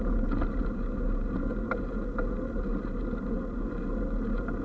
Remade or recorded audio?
recorded